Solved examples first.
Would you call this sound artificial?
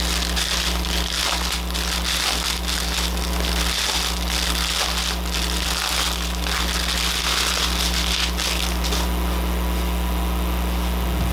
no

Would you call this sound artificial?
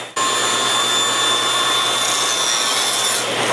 no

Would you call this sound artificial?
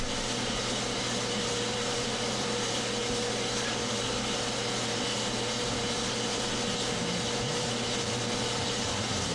yes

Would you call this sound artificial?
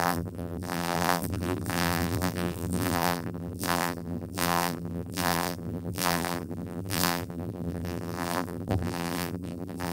yes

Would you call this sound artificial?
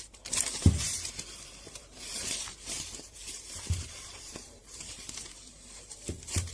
yes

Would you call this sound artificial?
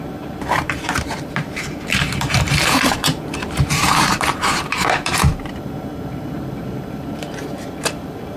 yes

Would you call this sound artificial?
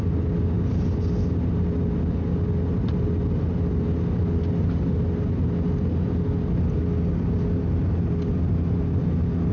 no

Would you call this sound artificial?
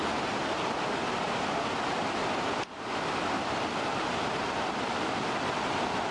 no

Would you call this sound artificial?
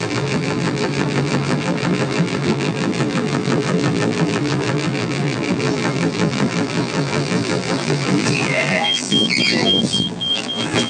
yes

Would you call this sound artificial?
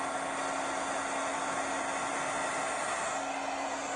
no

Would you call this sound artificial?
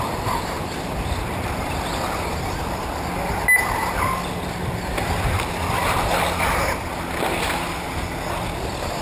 no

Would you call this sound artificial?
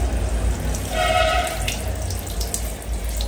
no